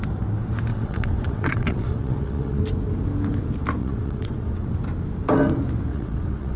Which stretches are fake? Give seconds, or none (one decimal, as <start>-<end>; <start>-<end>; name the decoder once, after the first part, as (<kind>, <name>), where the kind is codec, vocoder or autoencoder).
0.7-2.6 (vocoder, WaveNeXt); 3.8-4.7; 5.9-6.6